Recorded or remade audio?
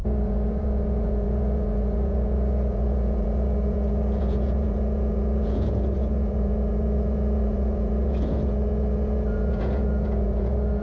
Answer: remade